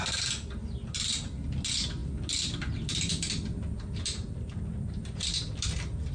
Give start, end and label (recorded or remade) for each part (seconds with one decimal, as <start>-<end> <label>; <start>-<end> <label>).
0.0-4.1 recorded; 4.1-5.5 remade; 5.5-6.1 recorded